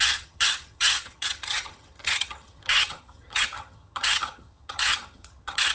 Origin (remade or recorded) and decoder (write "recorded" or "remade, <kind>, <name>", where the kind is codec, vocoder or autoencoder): remade, vocoder, HiFi-GAN